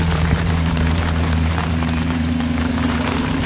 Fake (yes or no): yes